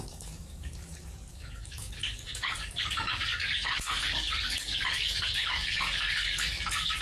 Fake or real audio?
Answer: fake